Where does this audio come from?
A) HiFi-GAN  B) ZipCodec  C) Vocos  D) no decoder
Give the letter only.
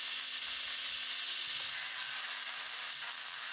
D